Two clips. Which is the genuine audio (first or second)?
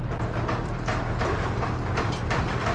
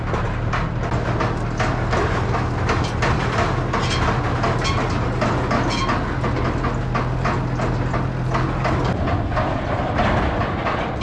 second